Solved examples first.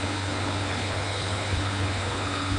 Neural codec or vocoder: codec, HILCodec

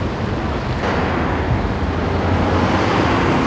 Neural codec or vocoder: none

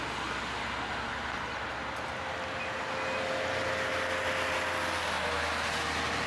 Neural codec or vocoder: none